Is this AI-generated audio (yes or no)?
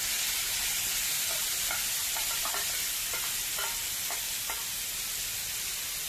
no